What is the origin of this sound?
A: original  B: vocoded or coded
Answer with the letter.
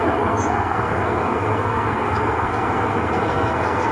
B